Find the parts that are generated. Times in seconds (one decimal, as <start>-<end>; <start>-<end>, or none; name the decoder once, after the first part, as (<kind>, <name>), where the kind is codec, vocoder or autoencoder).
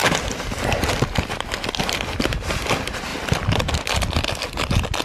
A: none